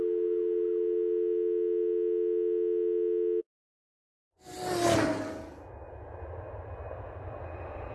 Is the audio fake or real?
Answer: real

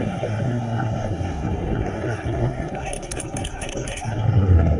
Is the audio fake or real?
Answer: fake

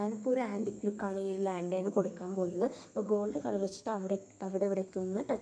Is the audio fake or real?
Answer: fake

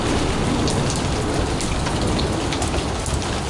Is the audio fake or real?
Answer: real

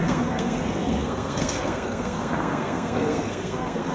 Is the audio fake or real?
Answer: fake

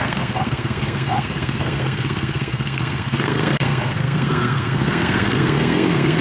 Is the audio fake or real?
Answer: fake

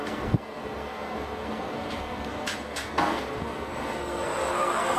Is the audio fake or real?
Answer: fake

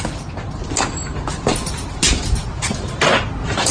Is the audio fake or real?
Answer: real